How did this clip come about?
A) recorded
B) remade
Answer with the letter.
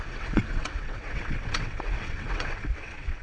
B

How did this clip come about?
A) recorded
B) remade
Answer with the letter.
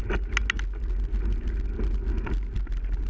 A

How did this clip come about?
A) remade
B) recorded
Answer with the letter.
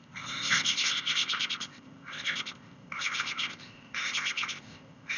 A